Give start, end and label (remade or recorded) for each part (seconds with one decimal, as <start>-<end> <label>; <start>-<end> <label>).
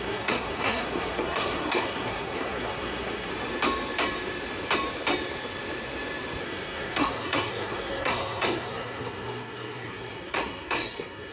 0.0-3.3 remade; 3.3-6.4 recorded; 6.4-11.3 remade